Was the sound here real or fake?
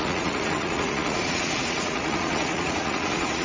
fake